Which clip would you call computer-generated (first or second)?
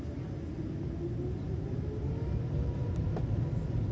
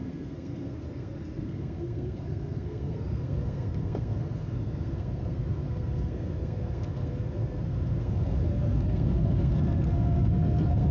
second